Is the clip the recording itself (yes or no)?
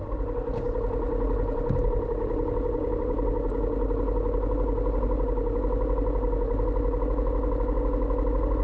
yes